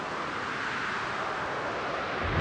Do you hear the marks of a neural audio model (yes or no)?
no